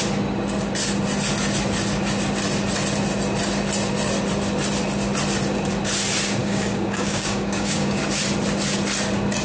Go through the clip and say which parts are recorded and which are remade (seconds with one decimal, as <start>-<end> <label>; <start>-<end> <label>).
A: 0.0-6.4 recorded; 6.4-8.0 remade; 8.0-9.4 recorded